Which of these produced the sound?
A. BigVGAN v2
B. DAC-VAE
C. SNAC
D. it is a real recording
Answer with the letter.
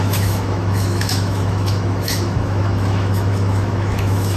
B